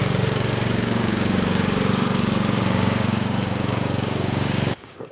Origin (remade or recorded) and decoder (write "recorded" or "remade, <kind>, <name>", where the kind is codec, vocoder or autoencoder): remade, codec, DAC